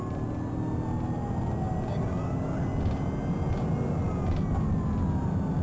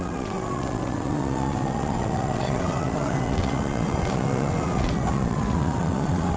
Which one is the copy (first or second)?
second